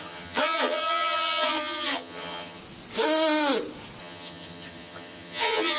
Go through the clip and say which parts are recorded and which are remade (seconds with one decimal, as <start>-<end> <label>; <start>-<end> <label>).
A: 0.0-2.6 remade; 2.6-4.0 recorded; 4.0-5.8 remade